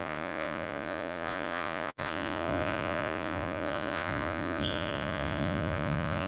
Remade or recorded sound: remade